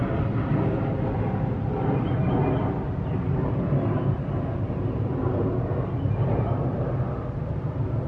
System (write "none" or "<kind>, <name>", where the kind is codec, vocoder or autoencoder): none